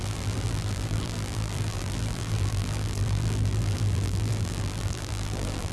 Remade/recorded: remade